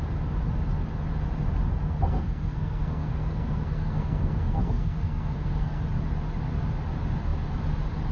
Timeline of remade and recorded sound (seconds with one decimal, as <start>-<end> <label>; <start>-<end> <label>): 0.0-1.8 recorded; 1.8-5.8 remade; 5.8-8.1 recorded